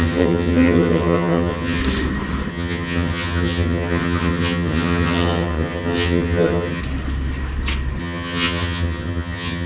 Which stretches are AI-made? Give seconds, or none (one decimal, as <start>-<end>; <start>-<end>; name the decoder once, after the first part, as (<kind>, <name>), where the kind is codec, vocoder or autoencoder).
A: 0.0-1.8 (vocoder, HiFi-GAN); 2.5-6.8; 8.0-9.7